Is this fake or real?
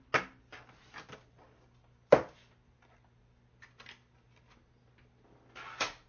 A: real